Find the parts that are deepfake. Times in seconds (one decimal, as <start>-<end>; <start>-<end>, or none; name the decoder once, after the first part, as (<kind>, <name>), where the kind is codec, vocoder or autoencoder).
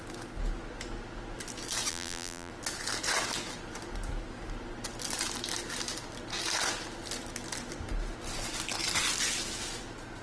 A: 1.9-2.5 (vocoder, BigVGAN v2)